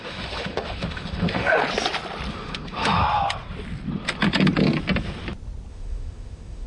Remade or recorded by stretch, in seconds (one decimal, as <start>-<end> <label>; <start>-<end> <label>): 0.0-1.6 remade; 1.6-2.3 recorded; 2.3-3.0 remade; 3.0-5.7 recorded; 5.7-6.7 remade